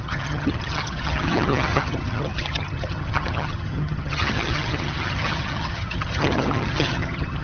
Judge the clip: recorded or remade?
remade